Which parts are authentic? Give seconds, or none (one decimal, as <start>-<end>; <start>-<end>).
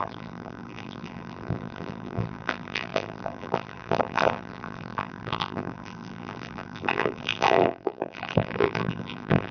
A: none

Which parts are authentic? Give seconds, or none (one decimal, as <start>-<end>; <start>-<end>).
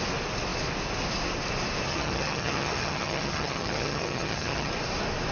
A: 0.0-1.9; 4.7-5.3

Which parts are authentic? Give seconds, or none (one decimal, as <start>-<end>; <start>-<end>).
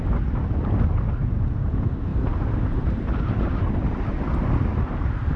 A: 0.0-1.2; 1.7-2.1; 3.5-5.4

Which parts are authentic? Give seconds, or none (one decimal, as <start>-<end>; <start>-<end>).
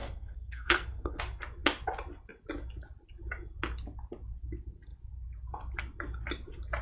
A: 1.2-6.8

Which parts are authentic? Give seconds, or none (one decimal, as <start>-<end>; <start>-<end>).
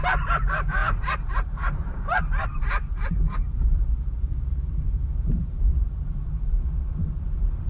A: none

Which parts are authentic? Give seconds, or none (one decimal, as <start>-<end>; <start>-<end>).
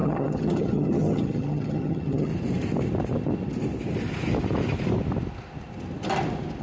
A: 2.3-6.6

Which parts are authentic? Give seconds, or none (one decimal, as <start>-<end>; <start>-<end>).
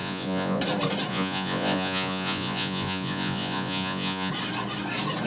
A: 0.6-1.1; 4.3-5.3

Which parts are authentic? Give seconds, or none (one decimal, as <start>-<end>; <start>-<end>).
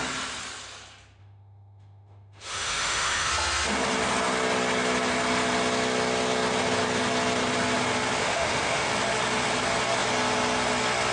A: 0.0-1.2; 3.3-8.2; 8.9-11.1